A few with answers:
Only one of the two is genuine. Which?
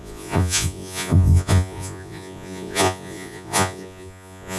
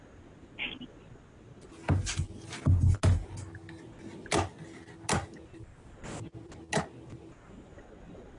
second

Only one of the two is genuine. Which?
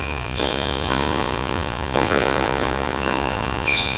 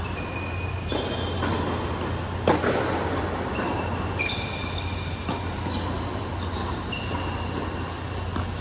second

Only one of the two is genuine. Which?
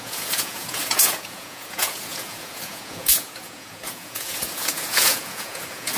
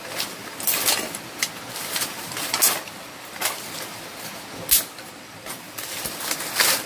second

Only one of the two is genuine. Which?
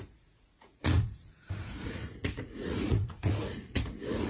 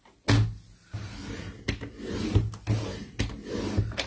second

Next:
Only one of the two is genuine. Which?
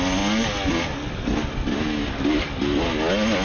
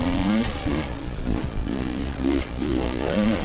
first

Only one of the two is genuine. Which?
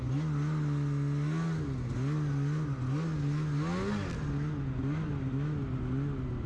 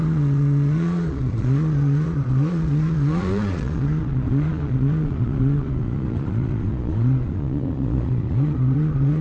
first